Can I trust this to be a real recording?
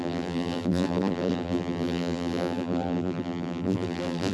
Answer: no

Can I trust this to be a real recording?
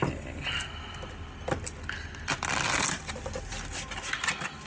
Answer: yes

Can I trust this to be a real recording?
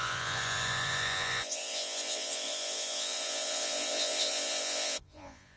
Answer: no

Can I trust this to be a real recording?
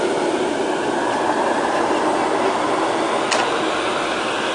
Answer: yes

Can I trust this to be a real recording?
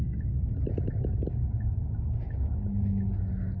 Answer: yes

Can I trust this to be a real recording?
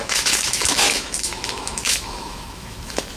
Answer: no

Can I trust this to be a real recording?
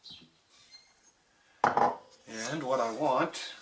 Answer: yes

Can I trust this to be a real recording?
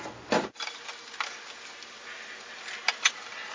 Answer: yes